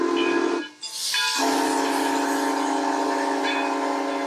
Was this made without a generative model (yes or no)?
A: yes